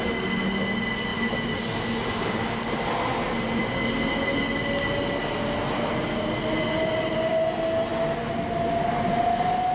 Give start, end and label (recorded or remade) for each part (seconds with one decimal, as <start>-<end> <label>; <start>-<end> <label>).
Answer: 0.0-9.7 recorded